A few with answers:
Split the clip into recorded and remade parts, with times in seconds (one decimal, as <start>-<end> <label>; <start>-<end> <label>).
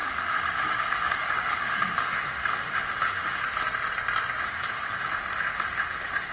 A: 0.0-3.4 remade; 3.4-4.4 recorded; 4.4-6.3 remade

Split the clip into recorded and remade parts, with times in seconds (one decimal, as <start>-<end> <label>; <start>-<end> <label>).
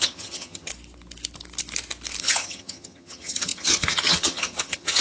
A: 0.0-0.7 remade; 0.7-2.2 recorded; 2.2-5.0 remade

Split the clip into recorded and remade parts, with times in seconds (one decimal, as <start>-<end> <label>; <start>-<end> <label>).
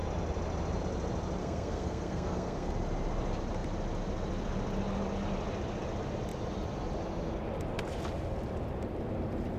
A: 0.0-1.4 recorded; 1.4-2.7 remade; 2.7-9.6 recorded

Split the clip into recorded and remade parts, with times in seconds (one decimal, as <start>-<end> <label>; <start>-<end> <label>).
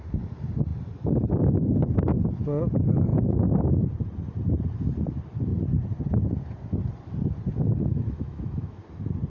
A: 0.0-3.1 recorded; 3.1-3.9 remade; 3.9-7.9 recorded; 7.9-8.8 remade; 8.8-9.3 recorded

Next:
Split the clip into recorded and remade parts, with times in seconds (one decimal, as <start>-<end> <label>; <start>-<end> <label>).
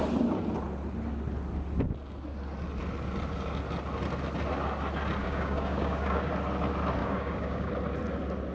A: 0.0-5.2 recorded; 5.2-6.3 remade; 6.3-7.0 recorded; 7.0-7.7 remade; 7.7-8.5 recorded